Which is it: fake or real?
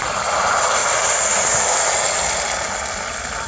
real